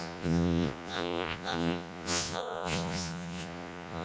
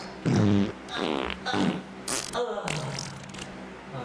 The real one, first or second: second